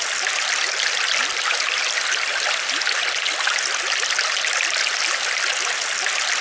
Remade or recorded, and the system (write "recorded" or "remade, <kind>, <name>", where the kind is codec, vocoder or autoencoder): recorded